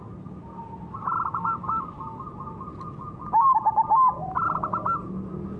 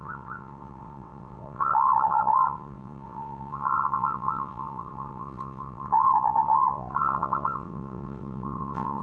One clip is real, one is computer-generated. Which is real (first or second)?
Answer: first